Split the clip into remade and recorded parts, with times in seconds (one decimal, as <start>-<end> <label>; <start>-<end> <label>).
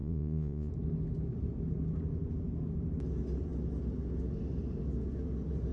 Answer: 0.0-0.7 remade; 0.7-5.7 recorded